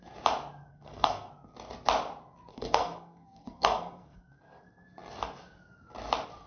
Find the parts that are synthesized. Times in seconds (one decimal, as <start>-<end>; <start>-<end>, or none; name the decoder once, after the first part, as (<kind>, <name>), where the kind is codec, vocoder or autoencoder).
0.7-1.3 (codec, SNAC); 2.5-4.3